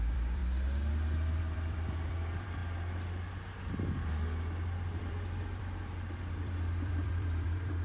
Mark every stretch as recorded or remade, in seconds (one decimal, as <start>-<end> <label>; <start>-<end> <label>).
0.0-0.4 remade; 0.4-1.4 recorded; 1.4-2.6 remade; 2.6-5.0 recorded; 5.0-7.8 remade